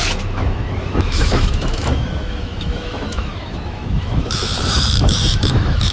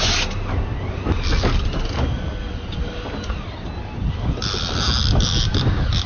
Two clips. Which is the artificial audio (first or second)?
first